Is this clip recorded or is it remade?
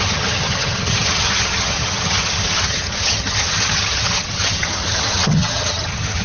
remade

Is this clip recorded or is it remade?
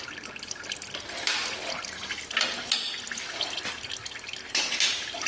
recorded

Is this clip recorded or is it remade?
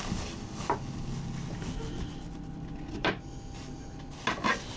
recorded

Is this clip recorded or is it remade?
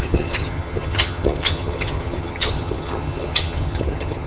remade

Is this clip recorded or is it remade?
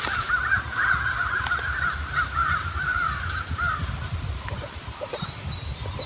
recorded